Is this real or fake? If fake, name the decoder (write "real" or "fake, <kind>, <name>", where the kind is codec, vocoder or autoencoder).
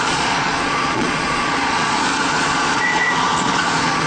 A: fake, vocoder, Vocos